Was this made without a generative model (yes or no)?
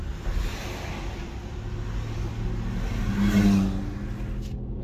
yes